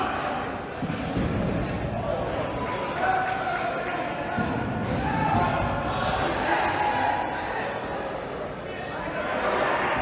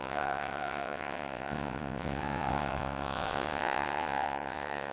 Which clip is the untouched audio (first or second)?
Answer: first